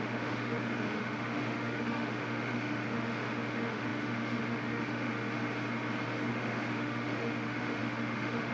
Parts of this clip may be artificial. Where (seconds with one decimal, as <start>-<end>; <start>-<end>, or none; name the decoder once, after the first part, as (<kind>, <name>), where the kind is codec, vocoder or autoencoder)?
0.0-5.1 (autoencoder, DAC-VAE); 6.3-8.5